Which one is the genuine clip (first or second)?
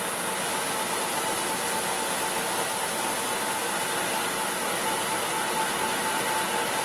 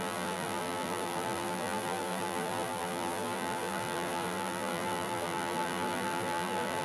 first